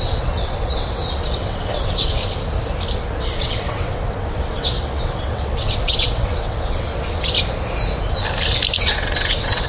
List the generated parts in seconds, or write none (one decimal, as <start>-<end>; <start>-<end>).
0.0-2.2; 3.2-6.9; 8.8-9.7